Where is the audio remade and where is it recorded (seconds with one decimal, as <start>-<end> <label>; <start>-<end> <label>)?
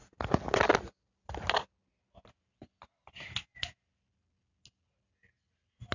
0.0-5.9 recorded